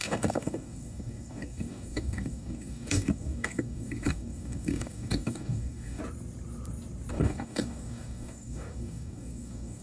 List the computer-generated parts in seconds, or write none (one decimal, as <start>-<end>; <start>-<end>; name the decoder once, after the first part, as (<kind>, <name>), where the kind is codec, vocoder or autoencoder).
0.0-6.0 (codec, DAC); 7.1-9.8